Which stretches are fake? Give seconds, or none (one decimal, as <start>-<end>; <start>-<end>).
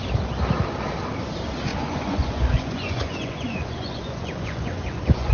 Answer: 1.7-5.3